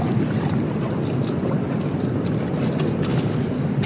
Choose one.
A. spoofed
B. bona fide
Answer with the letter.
B